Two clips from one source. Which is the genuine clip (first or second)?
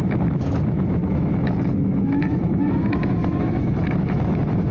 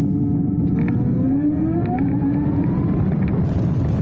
second